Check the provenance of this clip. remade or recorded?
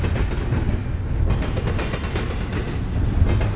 recorded